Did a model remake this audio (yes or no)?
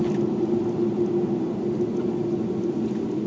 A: no